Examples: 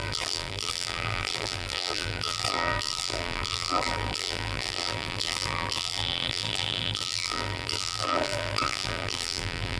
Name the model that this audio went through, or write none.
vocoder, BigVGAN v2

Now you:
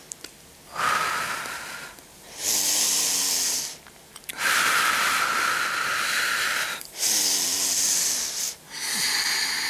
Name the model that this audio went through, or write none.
none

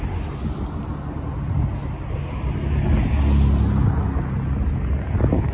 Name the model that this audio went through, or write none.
none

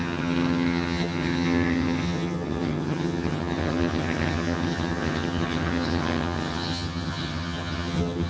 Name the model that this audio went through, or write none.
vocoder, HiFi-GAN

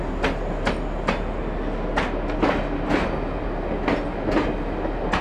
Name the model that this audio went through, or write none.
none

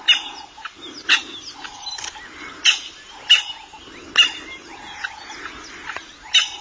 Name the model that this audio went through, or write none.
none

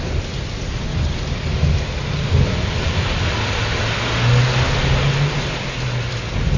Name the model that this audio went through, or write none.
none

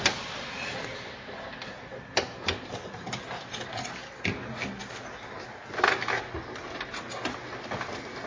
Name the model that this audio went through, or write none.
none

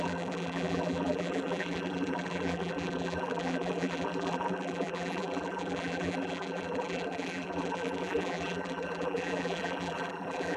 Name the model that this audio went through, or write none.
vocoder, BigVGAN v2